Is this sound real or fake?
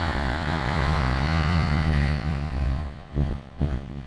fake